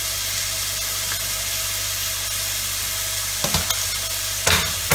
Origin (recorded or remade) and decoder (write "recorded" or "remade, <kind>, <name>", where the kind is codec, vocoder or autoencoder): recorded